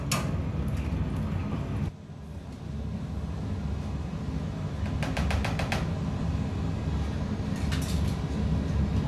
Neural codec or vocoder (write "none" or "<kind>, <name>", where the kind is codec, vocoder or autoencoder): none